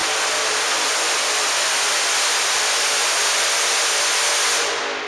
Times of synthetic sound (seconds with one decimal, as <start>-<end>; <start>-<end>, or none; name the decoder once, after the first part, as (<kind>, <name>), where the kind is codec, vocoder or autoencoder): none